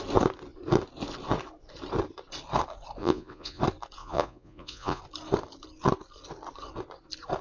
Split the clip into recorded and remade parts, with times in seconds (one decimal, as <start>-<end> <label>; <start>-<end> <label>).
0.0-3.0 recorded; 3.0-3.6 remade; 3.6-4.0 recorded; 4.0-5.0 remade; 5.0-7.4 recorded